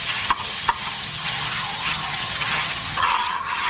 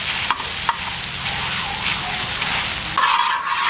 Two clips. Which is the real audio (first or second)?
second